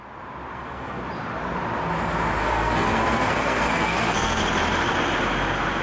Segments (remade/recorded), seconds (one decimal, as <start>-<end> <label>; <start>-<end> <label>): 0.0-0.5 recorded; 0.5-1.0 remade; 1.0-2.4 recorded; 2.4-4.4 remade; 4.4-5.8 recorded